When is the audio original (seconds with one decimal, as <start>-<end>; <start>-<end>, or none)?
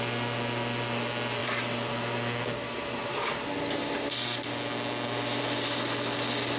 0.0-1.4; 1.9-6.6